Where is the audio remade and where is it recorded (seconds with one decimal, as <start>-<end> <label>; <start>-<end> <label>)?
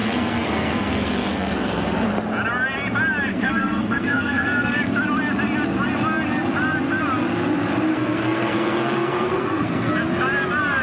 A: 0.0-1.9 remade; 1.9-3.3 recorded; 3.3-4.8 remade; 4.8-7.9 recorded; 7.9-9.9 remade; 9.9-10.8 recorded